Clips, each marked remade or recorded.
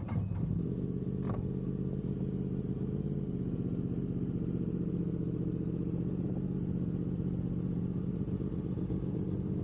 recorded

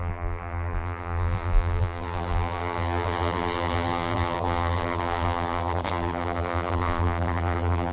remade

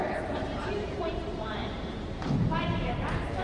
remade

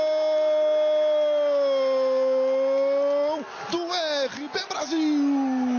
recorded